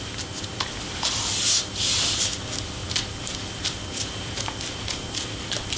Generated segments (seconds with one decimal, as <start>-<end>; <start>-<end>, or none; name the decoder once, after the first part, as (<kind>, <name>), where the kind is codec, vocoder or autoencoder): none